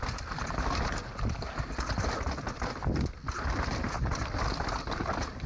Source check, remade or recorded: recorded